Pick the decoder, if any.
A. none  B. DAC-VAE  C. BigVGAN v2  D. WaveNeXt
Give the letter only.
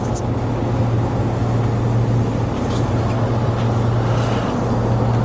A